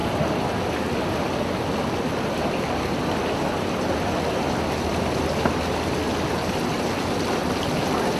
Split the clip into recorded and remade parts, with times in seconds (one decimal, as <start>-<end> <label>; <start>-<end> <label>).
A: 0.0-8.2 recorded